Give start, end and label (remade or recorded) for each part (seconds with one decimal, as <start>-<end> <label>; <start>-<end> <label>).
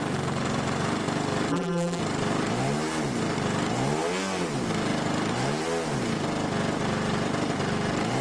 0.0-1.5 recorded; 1.5-2.0 remade; 2.0-8.2 recorded